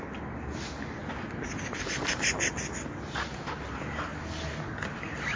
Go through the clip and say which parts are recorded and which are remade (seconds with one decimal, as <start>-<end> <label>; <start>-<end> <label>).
0.0-5.4 recorded